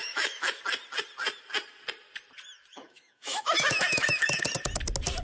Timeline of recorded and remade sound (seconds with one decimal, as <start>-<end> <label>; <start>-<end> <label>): 0.0-0.6 remade; 0.6-2.7 recorded; 2.7-4.4 remade; 4.4-5.2 recorded